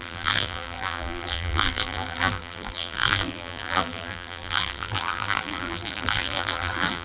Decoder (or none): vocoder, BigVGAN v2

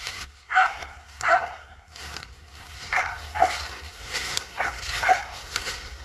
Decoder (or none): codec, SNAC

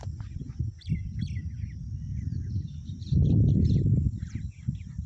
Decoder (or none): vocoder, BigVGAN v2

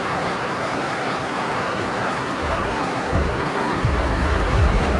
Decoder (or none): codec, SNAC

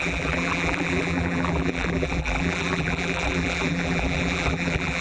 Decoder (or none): vocoder, BigVGAN v2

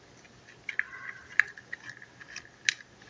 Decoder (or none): none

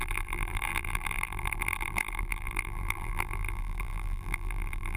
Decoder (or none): vocoder, BigVGAN v2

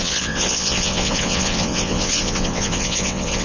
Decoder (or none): vocoder, WaveNeXt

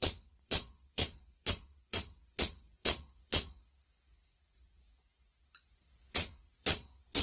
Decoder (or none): vocoder, Vocos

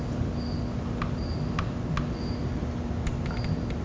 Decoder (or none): none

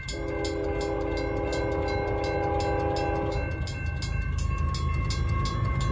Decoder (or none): none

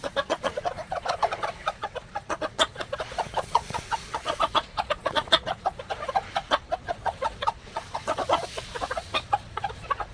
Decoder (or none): vocoder, Vocos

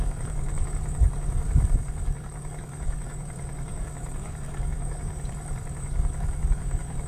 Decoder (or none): codec, DAC